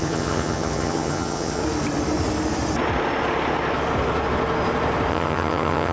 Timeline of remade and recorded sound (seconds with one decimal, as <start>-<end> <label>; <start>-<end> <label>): 0.0-1.6 remade; 1.6-5.1 recorded; 5.1-5.9 remade